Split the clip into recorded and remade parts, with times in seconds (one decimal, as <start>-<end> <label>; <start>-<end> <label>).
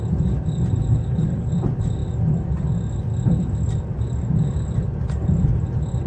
0.0-0.9 recorded; 0.9-1.5 remade; 1.5-6.1 recorded